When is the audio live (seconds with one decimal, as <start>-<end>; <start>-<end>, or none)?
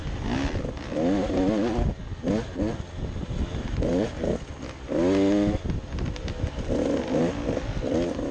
0.0-8.3